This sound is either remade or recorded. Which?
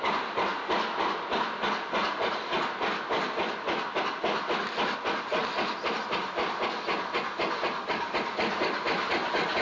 recorded